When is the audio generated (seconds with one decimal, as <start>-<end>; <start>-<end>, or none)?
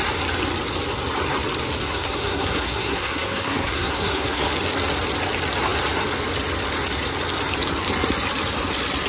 1.8-4.5